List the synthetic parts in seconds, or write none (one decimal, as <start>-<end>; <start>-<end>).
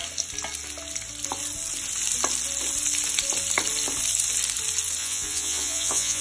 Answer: 5.0-6.2